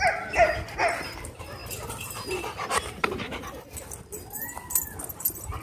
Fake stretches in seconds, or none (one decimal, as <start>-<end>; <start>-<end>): none